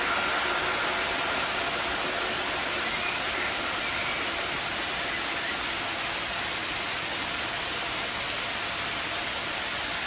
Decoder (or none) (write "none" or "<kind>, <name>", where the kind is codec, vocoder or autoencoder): none